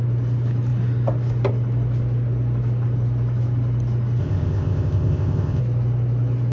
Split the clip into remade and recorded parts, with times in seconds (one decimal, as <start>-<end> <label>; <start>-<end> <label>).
0.0-4.2 recorded; 4.2-5.6 remade; 5.6-6.5 recorded